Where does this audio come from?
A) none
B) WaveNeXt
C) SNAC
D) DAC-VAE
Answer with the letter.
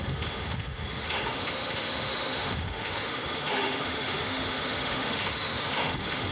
D